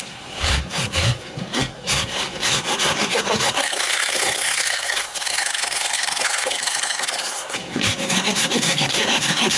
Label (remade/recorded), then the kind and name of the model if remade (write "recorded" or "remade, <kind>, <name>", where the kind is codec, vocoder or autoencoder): remade, codec, SNAC